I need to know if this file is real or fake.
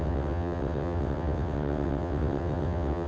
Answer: fake